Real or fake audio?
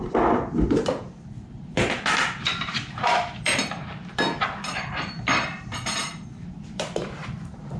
fake